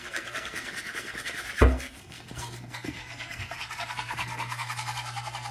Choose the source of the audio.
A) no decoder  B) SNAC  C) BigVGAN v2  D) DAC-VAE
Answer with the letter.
B